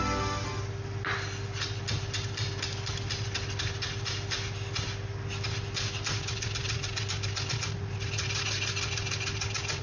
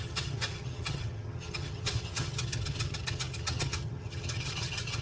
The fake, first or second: second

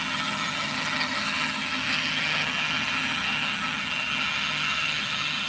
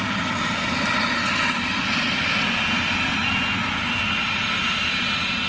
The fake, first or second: first